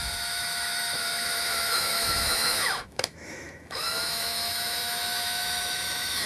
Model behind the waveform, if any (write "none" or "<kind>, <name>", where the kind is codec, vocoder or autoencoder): autoencoder, DAC-VAE